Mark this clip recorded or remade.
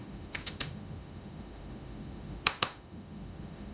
remade